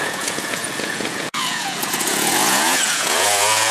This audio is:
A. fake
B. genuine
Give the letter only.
A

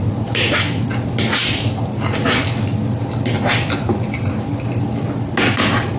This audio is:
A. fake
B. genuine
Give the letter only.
B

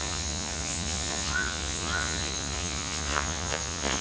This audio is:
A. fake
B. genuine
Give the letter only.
A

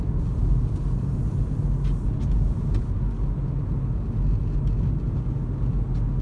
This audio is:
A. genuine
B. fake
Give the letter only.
A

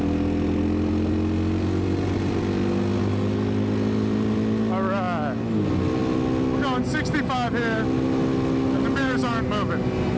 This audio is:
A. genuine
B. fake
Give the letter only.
A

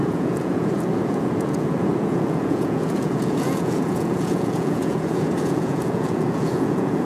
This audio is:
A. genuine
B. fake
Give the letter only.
B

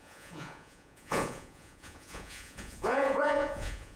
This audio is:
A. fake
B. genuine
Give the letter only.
A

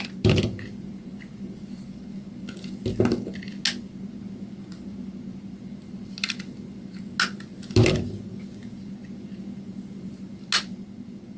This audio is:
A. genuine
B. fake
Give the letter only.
A